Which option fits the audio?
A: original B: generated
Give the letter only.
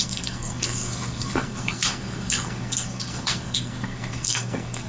B